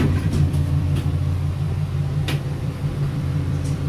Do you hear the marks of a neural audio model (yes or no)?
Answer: yes